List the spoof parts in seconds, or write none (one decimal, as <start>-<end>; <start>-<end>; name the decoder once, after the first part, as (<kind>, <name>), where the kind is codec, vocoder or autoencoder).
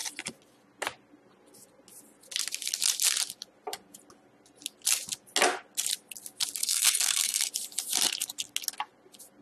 6.6-7.5 (codec, SNAC)